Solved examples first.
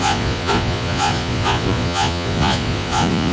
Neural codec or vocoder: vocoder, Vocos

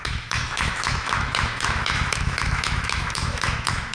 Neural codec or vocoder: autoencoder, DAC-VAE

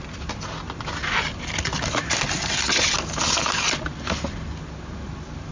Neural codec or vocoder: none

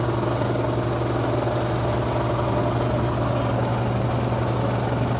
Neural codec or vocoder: none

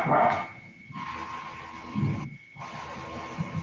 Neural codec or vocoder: none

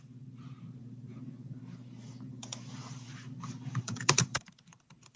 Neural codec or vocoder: vocoder, BigVGAN v2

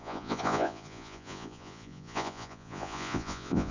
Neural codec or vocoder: vocoder, Vocos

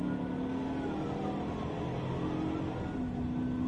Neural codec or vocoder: none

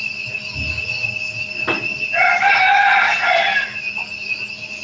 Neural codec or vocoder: none